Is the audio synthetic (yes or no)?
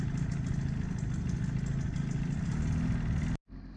no